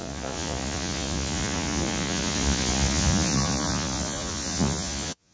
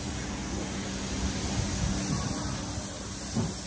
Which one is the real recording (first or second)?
second